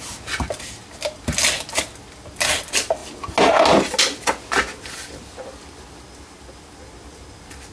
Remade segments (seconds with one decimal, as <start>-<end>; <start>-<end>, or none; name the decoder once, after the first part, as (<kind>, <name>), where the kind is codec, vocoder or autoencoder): none